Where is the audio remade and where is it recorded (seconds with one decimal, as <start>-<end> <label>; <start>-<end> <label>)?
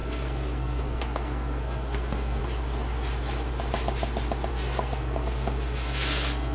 0.0-2.4 remade; 2.4-4.5 recorded; 4.5-6.5 remade